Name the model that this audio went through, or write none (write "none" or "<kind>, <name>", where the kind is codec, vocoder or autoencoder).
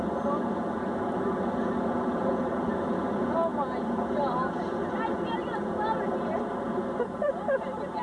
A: none